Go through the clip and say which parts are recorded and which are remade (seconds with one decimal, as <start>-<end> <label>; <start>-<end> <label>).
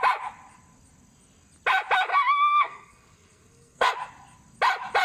0.0-2.1 recorded; 2.1-3.9 remade; 3.9-5.0 recorded